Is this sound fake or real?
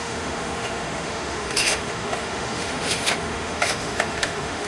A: fake